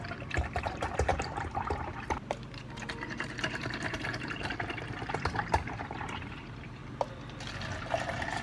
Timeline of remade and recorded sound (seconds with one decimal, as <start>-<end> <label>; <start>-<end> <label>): 0.0-6.8 remade; 6.8-7.8 recorded; 7.8-8.4 remade